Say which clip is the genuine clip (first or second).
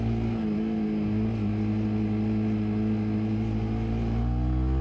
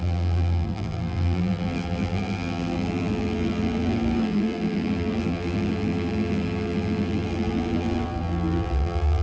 first